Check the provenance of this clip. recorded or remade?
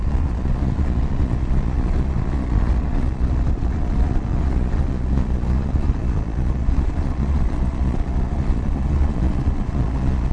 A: remade